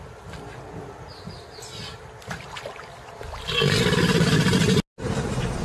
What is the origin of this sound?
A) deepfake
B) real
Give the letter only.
B